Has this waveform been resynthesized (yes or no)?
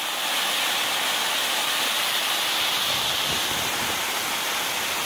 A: no